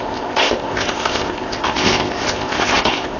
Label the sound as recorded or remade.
remade